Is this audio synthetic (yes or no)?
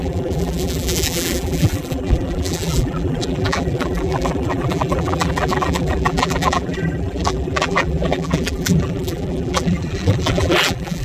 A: yes